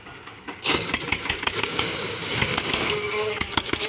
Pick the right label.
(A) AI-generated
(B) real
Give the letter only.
A